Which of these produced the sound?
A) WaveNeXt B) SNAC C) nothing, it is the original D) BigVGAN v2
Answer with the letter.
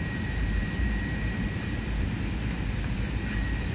D